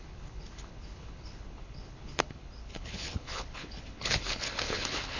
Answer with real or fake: fake